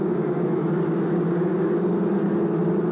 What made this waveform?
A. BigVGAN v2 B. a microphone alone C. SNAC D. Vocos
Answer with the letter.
B